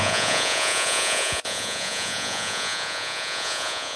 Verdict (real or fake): fake